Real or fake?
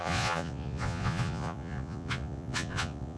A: fake